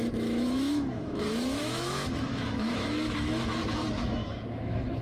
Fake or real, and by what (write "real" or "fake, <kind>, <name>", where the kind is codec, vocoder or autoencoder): fake, autoencoder, DAC-VAE